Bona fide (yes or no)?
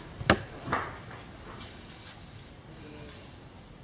yes